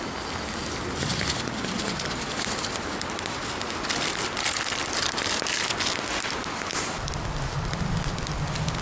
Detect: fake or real real